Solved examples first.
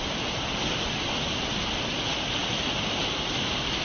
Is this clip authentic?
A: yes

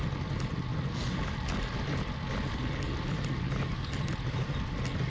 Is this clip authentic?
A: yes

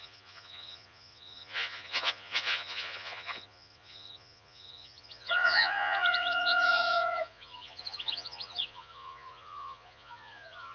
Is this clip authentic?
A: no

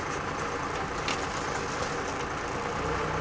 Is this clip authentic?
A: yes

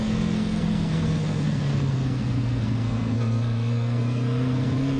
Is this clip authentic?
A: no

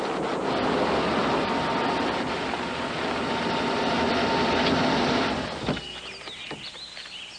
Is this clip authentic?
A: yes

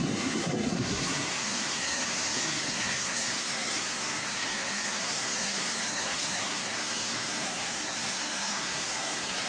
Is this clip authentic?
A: no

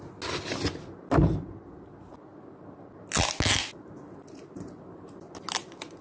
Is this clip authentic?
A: yes